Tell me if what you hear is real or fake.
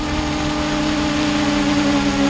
real